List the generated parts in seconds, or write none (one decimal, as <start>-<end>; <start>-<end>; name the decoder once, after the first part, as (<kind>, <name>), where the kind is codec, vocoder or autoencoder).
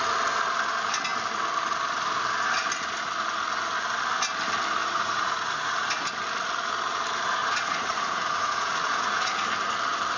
4.8-6.1 (vocoder, Vocos); 7.4-9.4